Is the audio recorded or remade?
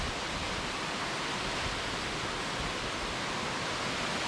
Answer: recorded